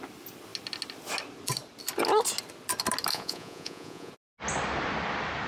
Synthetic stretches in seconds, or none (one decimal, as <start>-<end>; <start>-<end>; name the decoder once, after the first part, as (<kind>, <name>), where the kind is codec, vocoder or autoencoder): 3.1-4.1 (vocoder, Vocos)